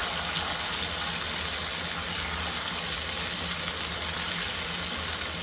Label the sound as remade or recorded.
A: recorded